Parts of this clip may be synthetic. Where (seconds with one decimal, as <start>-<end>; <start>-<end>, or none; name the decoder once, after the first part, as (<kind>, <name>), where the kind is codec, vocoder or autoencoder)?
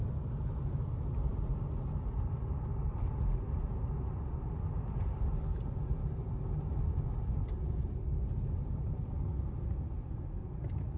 none